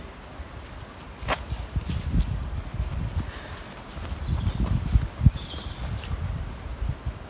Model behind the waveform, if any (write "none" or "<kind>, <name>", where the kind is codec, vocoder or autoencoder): none